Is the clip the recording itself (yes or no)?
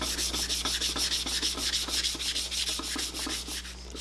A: yes